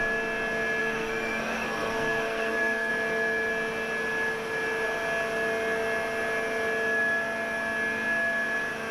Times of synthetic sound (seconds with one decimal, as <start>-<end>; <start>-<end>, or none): 0.8-2.9